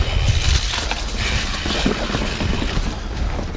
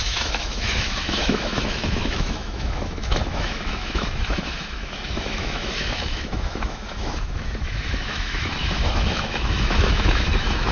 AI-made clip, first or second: second